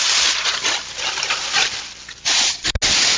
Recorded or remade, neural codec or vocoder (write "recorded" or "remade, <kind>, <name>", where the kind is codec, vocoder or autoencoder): recorded